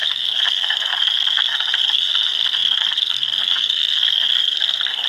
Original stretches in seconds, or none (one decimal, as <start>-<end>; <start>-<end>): none